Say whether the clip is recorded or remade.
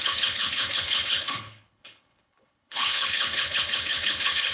remade